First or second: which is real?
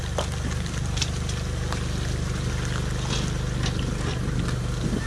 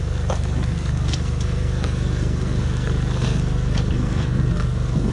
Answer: first